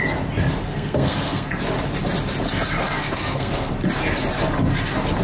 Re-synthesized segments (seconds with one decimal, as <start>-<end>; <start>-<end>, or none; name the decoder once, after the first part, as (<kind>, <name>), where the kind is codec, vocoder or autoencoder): 0.6-1.6 (codec, SNAC); 2.8-3.7